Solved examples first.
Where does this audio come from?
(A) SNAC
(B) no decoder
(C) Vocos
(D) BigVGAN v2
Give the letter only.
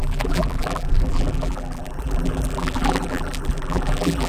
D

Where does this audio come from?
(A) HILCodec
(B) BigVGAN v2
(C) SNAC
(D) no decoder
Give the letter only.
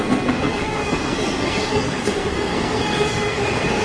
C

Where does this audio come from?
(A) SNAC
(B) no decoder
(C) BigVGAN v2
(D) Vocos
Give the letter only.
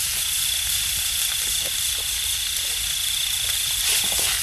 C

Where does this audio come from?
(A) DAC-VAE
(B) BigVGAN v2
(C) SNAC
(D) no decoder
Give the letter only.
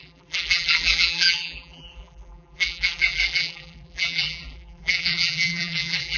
B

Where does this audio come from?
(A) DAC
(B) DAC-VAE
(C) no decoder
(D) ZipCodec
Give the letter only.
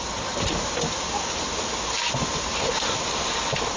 C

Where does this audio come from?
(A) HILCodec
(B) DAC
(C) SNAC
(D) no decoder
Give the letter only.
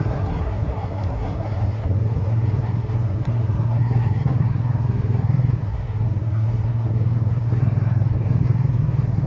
C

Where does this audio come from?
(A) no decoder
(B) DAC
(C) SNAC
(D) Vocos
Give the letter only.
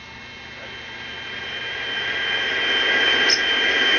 A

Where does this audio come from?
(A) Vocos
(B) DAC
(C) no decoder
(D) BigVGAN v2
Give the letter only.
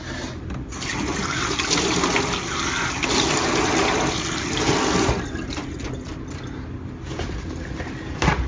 C